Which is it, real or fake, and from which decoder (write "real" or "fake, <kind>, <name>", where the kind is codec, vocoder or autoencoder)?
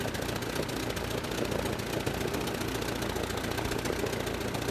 real